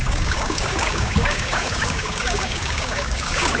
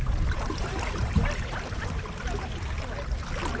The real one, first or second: second